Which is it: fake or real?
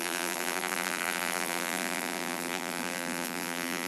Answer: fake